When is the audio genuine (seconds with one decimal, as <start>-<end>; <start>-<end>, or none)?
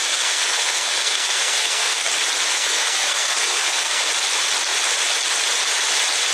2.1-2.5; 4.1-6.3